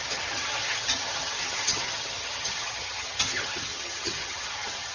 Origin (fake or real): fake